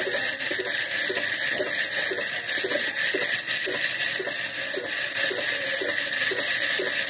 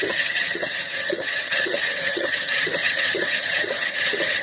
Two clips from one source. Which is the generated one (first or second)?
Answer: second